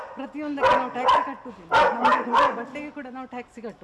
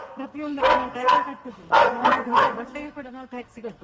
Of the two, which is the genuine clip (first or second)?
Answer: first